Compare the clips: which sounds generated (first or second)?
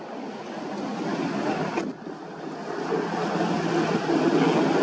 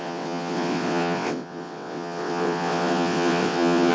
second